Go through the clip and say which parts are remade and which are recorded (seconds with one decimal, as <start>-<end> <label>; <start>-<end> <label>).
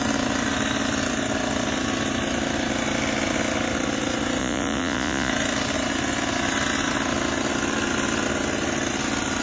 0.0-4.4 recorded; 4.4-5.3 remade; 5.3-9.4 recorded